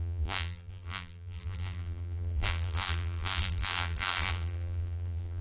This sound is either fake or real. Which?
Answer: fake